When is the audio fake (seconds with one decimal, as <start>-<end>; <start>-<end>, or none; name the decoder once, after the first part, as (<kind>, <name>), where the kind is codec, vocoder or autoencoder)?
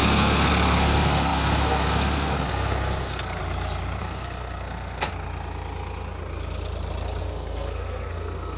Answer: 0.0-3.4 (codec, SNAC); 4.0-5.1; 7.2-8.6